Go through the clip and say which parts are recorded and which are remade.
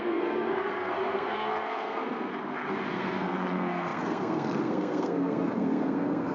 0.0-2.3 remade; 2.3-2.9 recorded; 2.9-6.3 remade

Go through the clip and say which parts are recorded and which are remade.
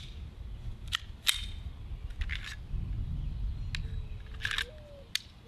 0.0-5.5 recorded